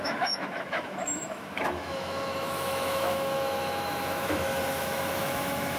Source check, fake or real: fake